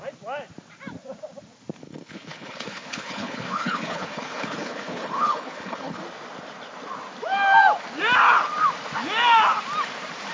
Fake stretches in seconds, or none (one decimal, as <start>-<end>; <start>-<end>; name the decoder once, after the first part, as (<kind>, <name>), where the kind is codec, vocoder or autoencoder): 1.8-6.0 (codec, HILCodec)